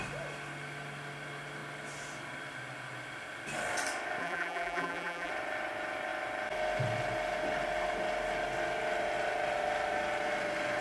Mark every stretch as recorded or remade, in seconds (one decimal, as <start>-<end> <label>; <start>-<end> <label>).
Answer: 0.0-4.2 recorded; 4.2-5.3 remade; 5.3-10.8 recorded